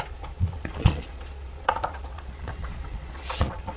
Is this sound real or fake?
fake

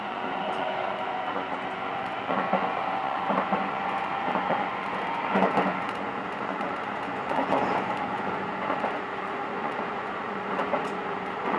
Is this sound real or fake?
fake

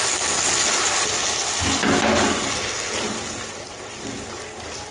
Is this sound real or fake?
real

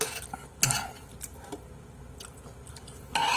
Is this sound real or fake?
real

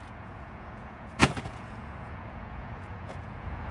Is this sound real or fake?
fake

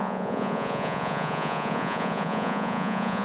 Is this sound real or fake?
fake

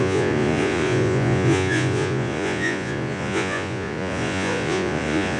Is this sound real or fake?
fake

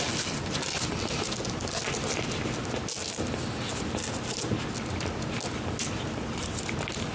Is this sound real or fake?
real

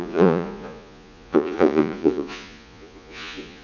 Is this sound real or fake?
fake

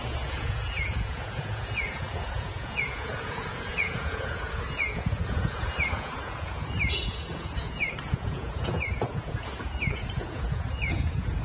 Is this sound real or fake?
fake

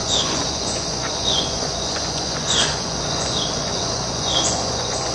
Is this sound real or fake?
fake